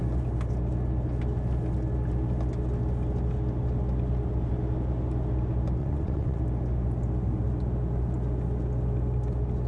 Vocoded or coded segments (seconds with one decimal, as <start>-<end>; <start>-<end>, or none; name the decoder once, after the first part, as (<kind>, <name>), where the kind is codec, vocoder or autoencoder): 5.8-6.4 (vocoder, WaveNeXt)